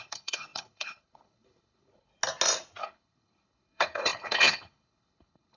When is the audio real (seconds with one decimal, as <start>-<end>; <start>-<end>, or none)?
2.1-2.8